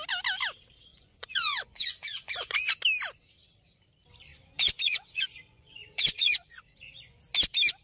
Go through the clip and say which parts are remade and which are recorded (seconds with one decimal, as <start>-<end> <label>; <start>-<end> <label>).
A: 0.0-0.9 recorded; 0.9-2.7 remade; 2.7-4.3 recorded; 4.3-7.2 remade; 7.2-7.8 recorded